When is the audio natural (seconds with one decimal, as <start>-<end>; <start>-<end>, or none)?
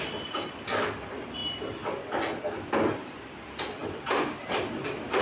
1.4-2.5